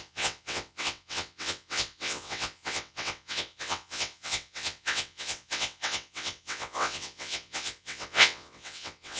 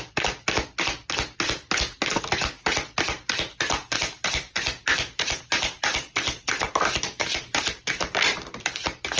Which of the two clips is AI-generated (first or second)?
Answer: first